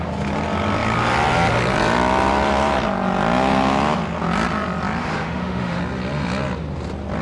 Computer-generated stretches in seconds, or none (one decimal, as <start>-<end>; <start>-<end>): 5.0-5.8